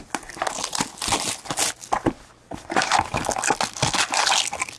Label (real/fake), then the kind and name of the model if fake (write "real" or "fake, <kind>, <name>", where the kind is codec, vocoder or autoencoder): real